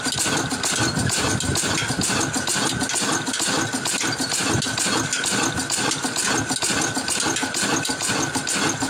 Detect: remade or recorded recorded